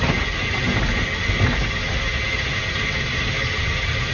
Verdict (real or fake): real